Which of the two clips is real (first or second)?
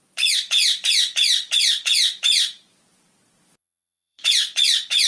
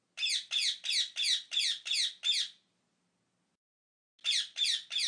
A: second